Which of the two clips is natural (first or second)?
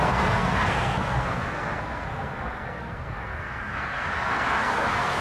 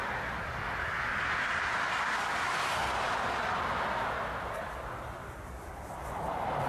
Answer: second